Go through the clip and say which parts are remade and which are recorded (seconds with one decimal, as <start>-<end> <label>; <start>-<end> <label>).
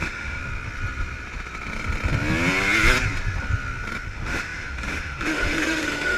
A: 0.0-0.4 remade; 0.4-4.1 recorded; 4.1-6.2 remade